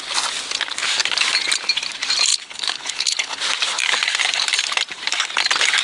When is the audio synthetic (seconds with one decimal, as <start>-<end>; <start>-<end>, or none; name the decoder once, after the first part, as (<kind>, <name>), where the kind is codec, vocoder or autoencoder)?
2.3-3.4 (codec, HILCodec)